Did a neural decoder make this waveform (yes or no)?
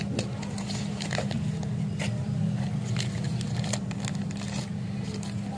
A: no